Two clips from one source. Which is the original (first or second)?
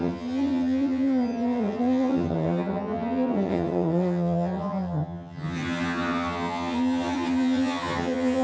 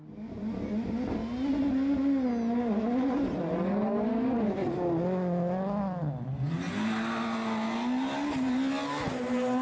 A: second